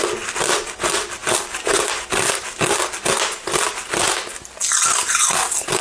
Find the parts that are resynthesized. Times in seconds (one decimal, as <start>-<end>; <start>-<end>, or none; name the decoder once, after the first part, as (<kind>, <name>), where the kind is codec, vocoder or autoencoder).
1.2-1.9 (vocoder, BigVGAN v2)